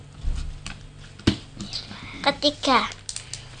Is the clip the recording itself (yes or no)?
yes